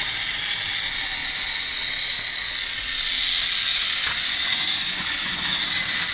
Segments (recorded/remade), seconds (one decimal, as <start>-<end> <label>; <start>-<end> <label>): 0.0-1.2 recorded; 1.2-1.8 remade; 1.8-3.7 recorded; 3.7-5.6 remade; 5.6-6.1 recorded